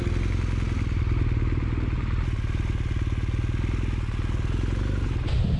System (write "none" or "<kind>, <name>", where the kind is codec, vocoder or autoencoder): none